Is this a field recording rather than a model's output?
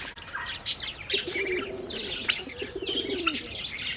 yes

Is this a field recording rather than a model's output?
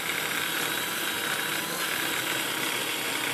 yes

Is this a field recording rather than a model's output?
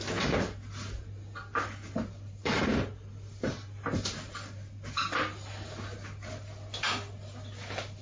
yes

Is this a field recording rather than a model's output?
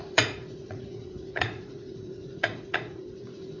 no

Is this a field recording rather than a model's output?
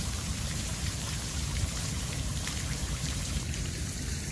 no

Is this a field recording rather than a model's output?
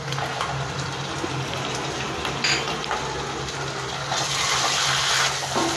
yes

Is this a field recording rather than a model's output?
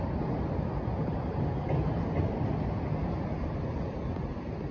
yes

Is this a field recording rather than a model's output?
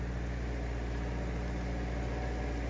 yes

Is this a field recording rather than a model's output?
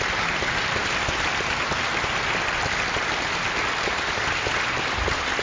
yes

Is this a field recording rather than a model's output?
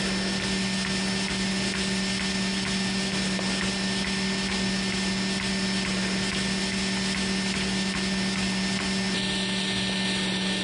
yes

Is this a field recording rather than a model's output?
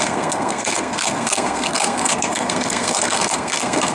no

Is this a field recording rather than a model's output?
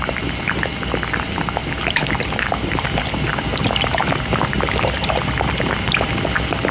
yes